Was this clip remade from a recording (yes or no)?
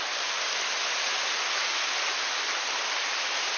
no